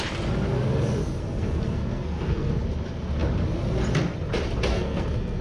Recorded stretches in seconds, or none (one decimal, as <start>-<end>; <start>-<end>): 0.0-1.0; 2.5-4.7